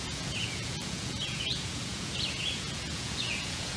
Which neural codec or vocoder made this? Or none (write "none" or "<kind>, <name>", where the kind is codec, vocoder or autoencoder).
vocoder, Vocos